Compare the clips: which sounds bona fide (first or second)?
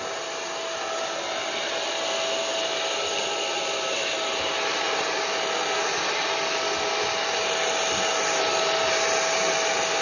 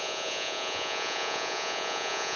first